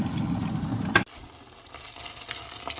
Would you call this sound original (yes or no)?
yes